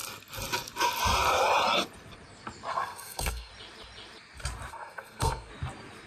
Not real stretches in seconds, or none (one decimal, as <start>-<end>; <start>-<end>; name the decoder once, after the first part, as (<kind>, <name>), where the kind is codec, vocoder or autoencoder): 2.7-3.5 (codec, SNAC); 4.7-5.5